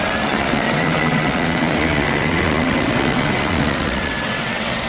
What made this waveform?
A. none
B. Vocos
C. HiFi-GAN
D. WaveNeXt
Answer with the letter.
D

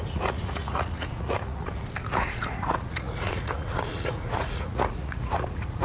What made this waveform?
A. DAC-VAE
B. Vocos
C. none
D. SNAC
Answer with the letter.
B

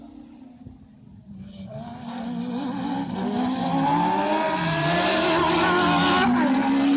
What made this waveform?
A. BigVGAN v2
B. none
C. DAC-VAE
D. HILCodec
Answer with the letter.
B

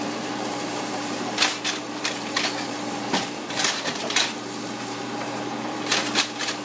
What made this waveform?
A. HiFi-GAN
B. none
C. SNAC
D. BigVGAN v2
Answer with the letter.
D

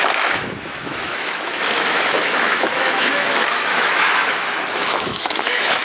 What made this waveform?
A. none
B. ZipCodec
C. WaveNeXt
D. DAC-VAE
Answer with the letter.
D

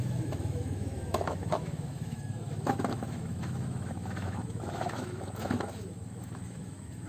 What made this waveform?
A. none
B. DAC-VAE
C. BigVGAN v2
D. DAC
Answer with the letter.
B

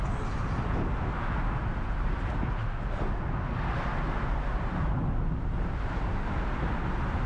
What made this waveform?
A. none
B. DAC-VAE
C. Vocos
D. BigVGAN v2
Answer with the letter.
A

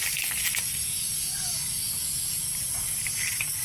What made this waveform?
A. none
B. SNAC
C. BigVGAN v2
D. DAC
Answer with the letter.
A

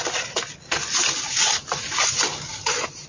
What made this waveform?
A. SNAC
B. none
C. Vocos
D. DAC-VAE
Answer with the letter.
B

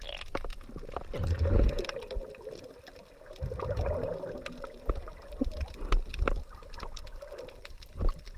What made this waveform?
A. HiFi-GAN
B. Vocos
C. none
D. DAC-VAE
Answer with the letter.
C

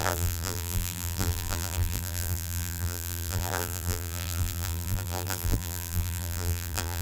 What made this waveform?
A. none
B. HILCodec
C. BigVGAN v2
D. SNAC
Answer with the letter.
C